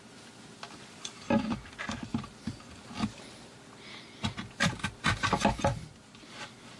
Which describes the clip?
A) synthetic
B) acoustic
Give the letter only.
B